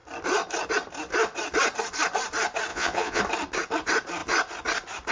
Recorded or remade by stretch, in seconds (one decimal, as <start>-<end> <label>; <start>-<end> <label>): 0.0-2.7 recorded; 2.7-3.2 remade; 3.2-5.1 recorded